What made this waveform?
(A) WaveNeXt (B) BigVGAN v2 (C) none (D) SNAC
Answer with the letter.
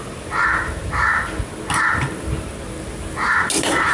C